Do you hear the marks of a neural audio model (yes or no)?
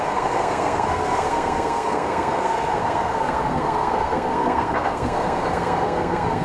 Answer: yes